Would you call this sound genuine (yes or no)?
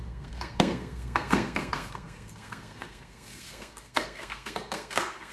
no